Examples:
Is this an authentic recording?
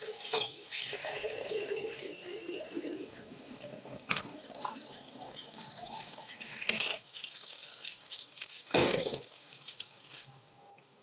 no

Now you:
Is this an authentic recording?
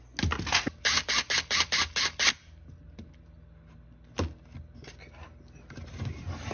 yes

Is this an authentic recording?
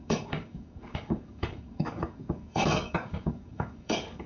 no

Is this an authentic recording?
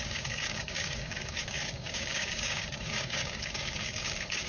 no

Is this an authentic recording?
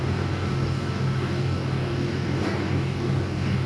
no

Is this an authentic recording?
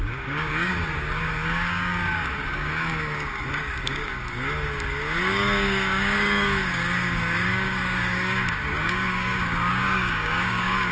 no